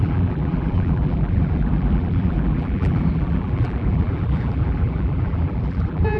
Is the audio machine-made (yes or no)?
yes